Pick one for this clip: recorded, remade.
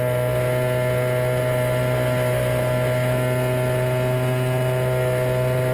recorded